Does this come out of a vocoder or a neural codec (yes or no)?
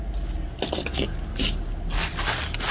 no